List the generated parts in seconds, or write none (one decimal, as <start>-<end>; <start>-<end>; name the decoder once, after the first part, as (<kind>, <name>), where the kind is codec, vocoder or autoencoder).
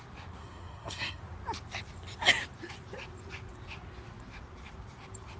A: 0.4-1.2 (codec, SNAC)